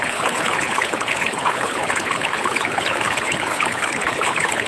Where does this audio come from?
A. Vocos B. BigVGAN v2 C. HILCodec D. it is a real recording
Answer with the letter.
C